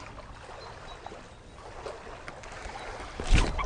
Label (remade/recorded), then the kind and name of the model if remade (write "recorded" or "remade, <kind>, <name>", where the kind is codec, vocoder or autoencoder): recorded